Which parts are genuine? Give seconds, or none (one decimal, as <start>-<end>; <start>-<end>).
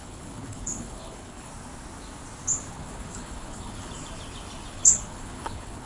1.5-2.7; 3.9-4.7